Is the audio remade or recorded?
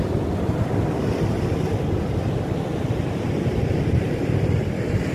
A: recorded